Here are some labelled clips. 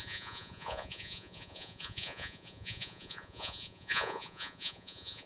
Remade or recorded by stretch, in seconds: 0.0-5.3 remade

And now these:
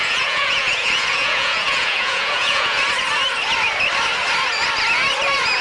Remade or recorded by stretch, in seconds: 0.0-2.8 remade; 2.8-5.6 recorded

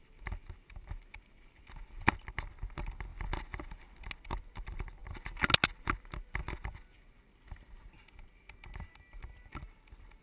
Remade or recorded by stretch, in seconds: 0.0-10.2 recorded

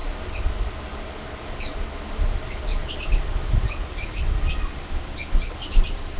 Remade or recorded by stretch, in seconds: 0.0-6.2 recorded

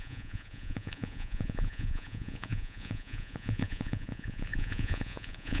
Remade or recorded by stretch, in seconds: 0.0-5.6 remade